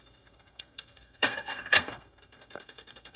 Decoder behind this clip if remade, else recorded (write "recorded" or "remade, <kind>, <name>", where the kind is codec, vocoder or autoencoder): remade, codec, SNAC